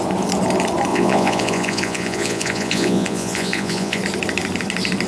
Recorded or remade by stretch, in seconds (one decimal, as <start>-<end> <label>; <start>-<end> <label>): 0.0-0.9 recorded; 0.9-4.0 remade; 4.0-5.1 recorded